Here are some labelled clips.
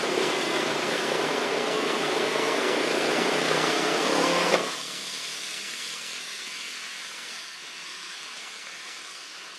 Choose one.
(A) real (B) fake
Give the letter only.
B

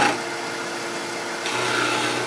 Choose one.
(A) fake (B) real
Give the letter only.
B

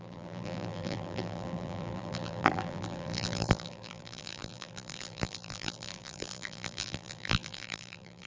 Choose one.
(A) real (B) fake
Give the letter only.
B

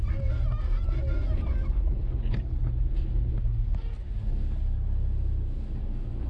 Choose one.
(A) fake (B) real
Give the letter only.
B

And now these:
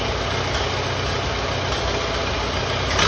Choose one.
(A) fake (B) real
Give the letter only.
B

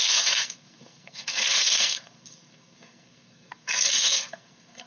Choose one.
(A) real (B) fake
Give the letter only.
B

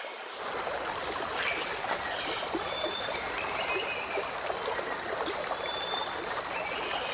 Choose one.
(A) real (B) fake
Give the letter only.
A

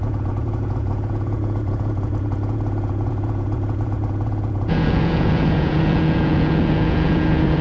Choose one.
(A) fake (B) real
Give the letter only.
A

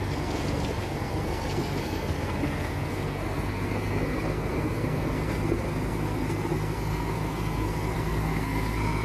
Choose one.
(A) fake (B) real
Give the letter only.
A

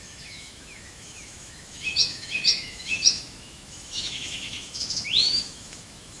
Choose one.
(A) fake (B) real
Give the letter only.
A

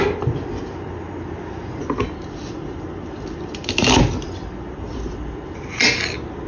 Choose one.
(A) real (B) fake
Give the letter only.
A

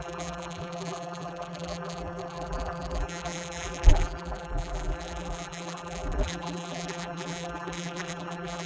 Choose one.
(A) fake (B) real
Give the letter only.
A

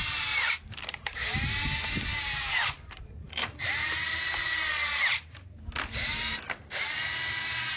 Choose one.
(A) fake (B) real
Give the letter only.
A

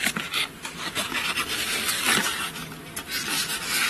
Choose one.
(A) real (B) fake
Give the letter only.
A